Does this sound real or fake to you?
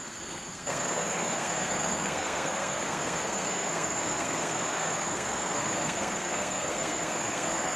fake